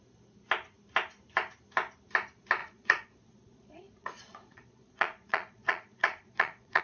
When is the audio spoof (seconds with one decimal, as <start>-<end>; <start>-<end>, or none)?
2.6-6.8